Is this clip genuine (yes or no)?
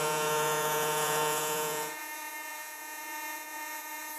no